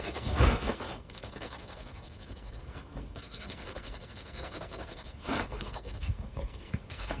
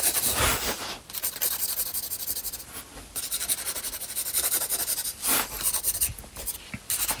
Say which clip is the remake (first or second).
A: first